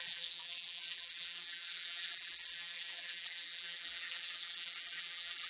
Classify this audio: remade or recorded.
remade